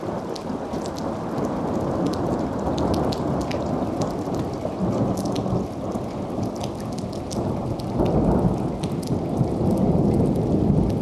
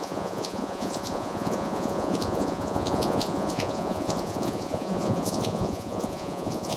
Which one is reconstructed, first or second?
second